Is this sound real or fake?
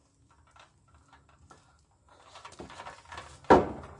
real